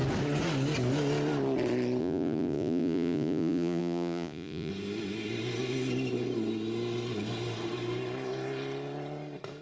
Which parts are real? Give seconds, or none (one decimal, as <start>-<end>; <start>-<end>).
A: 0.0-2.0; 4.7-9.6